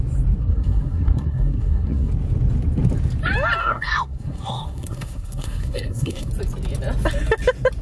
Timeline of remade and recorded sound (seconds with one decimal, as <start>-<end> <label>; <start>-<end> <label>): 0.0-0.4 recorded; 0.4-2.1 remade; 2.1-3.6 recorded; 3.6-6.3 remade; 6.3-7.8 recorded